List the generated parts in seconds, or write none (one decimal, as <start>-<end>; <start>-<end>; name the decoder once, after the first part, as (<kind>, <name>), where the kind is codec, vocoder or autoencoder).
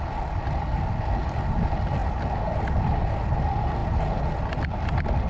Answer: none